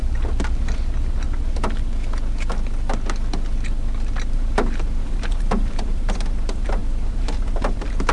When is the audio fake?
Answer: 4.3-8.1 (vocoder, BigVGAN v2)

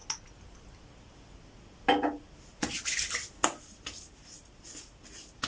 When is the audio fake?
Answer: none